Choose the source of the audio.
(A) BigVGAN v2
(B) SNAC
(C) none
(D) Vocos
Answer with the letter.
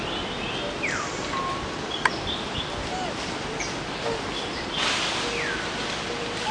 C